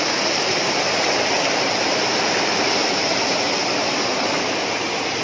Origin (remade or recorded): recorded